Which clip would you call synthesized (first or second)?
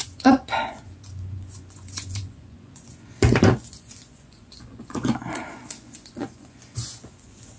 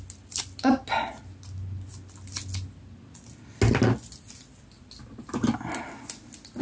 first